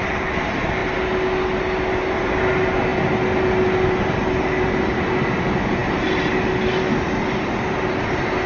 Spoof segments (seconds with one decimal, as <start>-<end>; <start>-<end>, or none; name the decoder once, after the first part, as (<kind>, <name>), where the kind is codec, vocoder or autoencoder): none